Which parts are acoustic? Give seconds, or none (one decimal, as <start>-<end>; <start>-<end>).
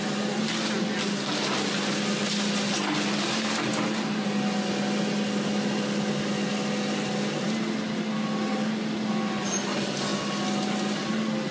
0.0-11.5